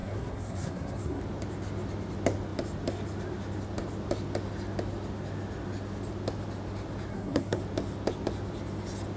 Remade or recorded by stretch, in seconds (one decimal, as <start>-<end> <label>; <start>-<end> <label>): 0.0-1.2 remade; 1.2-7.1 recorded; 7.1-7.6 remade; 7.6-9.2 recorded